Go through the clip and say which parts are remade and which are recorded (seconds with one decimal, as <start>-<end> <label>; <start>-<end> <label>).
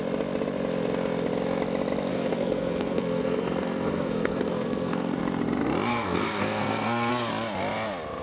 0.0-2.1 recorded; 2.1-5.2 remade; 5.2-5.9 recorded; 5.9-7.1 remade; 7.1-8.2 recorded